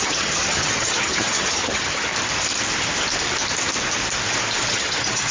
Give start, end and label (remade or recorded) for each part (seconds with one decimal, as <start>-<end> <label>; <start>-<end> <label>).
0.0-2.1 remade; 2.1-4.7 recorded; 4.7-5.3 remade